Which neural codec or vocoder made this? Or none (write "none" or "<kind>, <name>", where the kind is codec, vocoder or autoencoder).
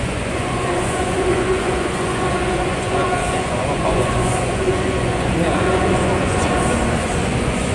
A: vocoder, Vocos